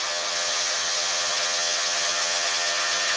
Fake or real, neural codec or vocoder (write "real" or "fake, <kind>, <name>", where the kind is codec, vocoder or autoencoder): fake, vocoder, HiFi-GAN